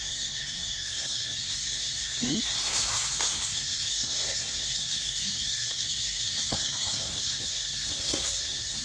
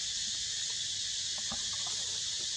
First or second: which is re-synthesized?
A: first